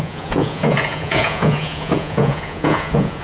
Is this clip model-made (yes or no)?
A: yes